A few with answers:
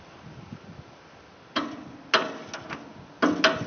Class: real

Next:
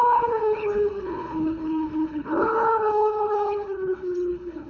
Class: fake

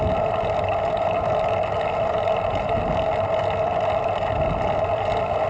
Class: real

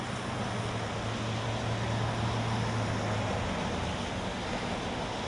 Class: real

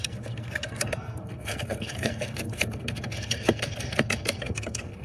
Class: fake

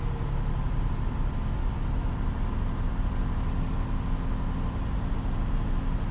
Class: real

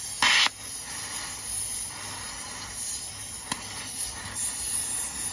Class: real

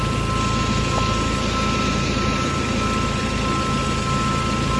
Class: real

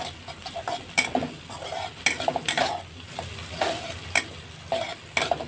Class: real